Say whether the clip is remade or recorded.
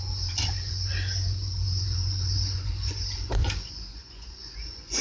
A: remade